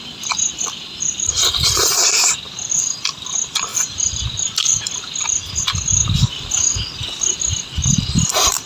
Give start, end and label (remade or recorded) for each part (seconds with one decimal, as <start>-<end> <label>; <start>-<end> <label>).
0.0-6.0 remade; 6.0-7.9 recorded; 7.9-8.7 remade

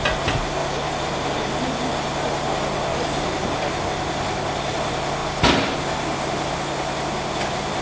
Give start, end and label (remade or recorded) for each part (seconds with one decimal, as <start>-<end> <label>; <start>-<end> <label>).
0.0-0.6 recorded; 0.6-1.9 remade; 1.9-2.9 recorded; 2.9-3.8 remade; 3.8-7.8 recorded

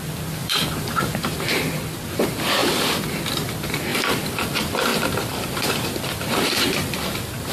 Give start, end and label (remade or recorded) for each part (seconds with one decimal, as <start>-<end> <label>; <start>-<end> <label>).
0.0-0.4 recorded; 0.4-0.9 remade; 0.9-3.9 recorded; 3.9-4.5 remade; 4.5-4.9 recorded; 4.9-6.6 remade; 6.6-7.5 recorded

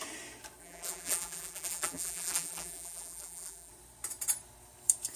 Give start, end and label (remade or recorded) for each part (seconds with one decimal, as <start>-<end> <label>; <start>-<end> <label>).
0.0-0.6 recorded; 0.6-3.7 remade; 3.7-5.2 recorded

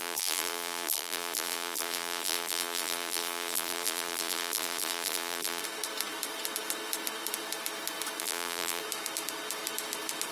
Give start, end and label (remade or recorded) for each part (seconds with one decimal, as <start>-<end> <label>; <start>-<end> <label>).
0.0-5.6 remade; 5.6-8.2 recorded; 8.2-8.8 remade; 8.8-10.3 recorded

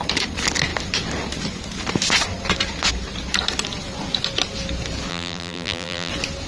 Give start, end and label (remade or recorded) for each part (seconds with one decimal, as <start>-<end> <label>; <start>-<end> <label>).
0.0-5.1 recorded; 5.1-6.1 remade; 6.1-6.5 recorded

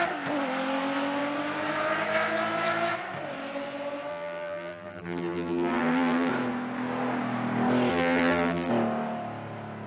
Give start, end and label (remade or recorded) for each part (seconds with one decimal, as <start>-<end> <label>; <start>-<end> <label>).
0.0-4.1 recorded; 4.1-6.3 remade; 6.3-7.9 recorded; 7.9-8.7 remade; 8.7-9.9 recorded